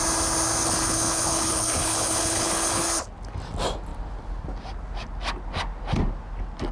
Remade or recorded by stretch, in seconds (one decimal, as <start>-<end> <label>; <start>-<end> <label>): 0.0-0.6 recorded; 0.6-2.8 remade; 2.8-6.7 recorded